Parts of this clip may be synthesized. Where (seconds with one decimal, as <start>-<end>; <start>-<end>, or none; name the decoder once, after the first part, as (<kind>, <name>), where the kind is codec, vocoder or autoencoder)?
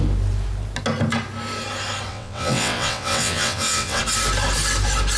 2.1-4.0 (vocoder, WaveNeXt)